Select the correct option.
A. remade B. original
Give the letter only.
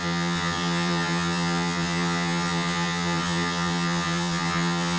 A